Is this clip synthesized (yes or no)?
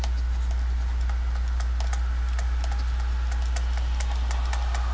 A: no